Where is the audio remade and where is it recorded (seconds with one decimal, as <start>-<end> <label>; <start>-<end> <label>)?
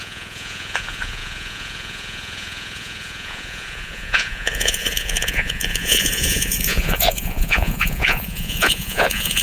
0.0-9.4 remade